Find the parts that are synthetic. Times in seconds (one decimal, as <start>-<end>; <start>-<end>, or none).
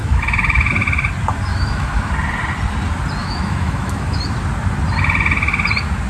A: 0.0-0.7; 1.5-2.1; 3.2-4.2